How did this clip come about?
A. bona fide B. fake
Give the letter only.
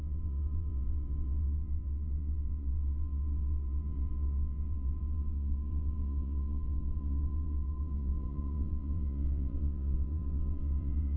B